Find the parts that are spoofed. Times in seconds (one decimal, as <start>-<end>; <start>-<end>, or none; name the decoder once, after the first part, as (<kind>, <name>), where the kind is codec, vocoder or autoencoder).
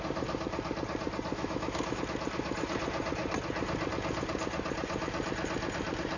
1.3-2.0 (autoencoder, DAC-VAE)